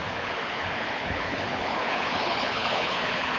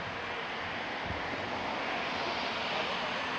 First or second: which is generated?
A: first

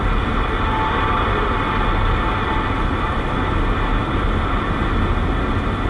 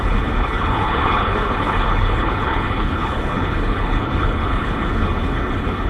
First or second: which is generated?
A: second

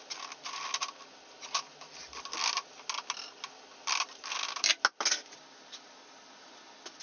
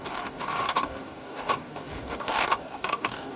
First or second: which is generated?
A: second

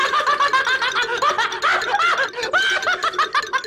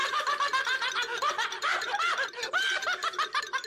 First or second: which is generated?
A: second